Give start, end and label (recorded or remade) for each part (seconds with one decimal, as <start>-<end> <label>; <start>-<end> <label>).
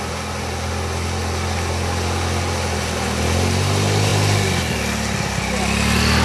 0.0-6.2 recorded